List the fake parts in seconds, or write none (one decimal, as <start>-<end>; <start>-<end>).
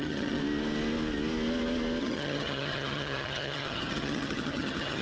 0.0-0.4; 2.0-5.0